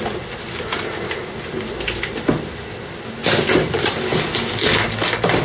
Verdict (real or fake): real